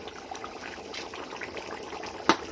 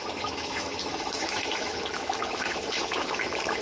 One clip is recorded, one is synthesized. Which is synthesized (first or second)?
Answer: second